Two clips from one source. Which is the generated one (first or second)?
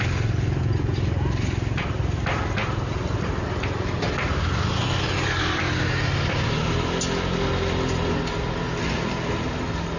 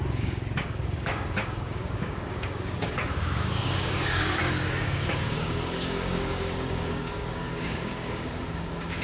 second